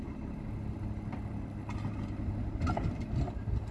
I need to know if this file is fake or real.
real